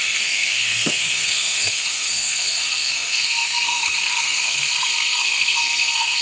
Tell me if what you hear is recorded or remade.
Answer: remade